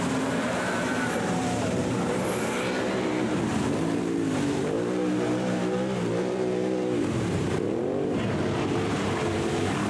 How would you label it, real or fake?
fake